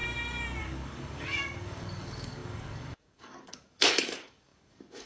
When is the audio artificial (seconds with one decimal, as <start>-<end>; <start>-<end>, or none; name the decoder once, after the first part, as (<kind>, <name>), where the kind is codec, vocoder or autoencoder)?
0.6-5.1 (codec, DAC)